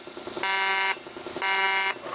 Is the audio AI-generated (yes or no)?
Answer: no